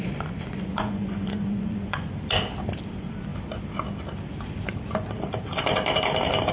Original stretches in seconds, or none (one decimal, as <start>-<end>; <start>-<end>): 2.1-6.5